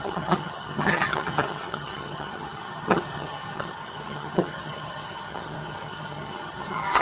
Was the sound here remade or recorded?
remade